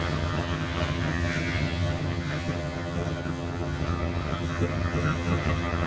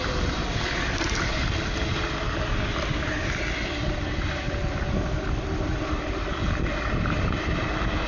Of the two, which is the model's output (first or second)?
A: first